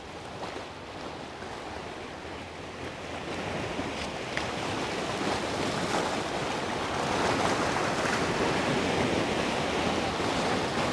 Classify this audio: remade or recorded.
recorded